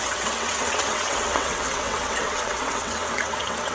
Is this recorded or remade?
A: remade